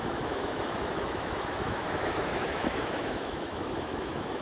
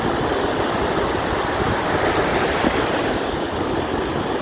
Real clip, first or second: second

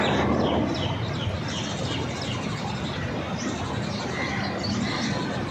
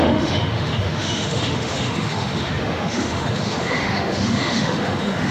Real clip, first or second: first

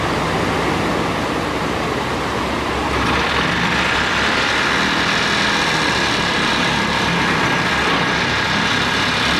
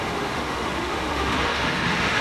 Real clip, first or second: first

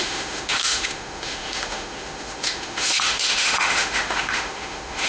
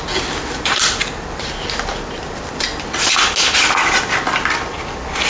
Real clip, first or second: second